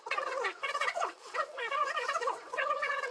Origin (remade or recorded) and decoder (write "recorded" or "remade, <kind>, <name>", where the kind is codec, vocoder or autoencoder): remade, vocoder, WaveNeXt